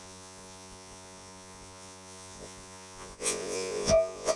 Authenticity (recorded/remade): remade